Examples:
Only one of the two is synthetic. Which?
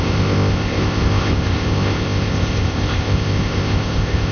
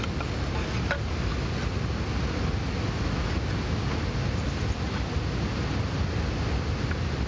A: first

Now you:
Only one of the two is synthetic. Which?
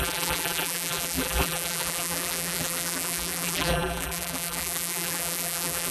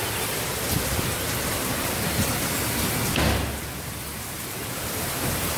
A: first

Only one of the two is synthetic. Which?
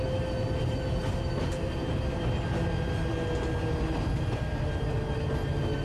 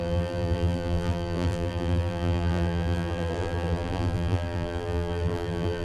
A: second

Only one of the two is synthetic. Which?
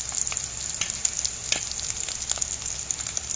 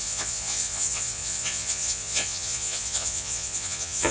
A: second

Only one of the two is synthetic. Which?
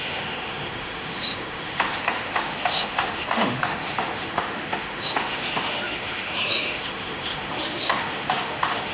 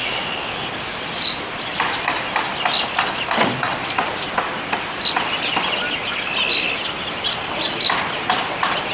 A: first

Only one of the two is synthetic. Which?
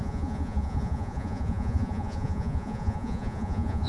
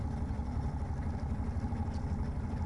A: first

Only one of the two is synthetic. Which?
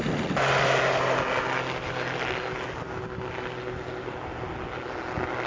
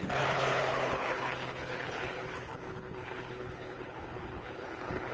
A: second